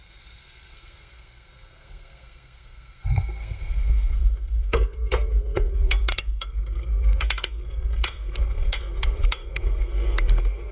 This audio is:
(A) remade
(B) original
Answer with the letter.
A